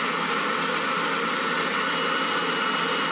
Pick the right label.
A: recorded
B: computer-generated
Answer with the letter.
A